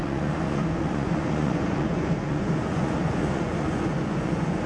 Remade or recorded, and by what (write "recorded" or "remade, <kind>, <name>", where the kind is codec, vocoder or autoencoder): remade, vocoder, Vocos